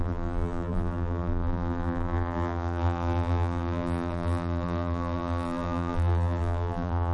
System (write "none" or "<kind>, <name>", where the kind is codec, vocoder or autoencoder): vocoder, BigVGAN v2